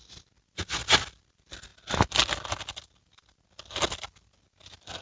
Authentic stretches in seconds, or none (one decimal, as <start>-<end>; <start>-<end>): 0.0-5.0